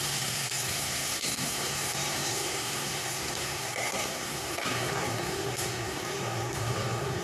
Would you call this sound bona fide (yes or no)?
no